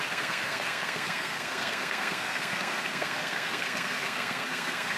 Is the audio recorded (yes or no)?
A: no